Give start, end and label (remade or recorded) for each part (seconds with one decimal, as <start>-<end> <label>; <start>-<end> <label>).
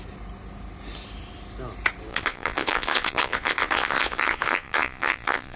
0.0-2.1 recorded; 2.1-5.6 remade